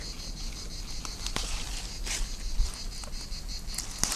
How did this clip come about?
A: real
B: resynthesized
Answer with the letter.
A